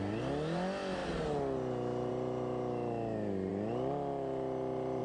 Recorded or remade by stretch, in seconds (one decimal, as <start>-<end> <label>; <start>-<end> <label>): 0.0-5.0 recorded